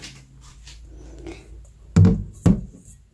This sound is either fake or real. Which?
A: real